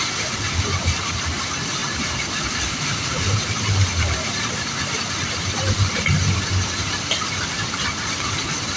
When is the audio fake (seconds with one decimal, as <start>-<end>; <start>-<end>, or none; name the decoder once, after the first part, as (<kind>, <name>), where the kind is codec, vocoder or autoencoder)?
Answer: 0.0-8.8 (vocoder, BigVGAN v2)